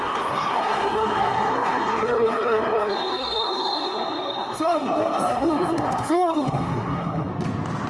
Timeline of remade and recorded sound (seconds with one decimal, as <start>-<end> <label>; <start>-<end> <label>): 0.0-7.3 remade; 7.3-7.9 recorded